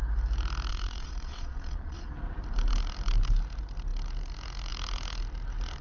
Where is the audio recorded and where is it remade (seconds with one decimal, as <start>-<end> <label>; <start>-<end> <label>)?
0.0-0.7 recorded; 0.7-2.1 remade; 2.1-5.8 recorded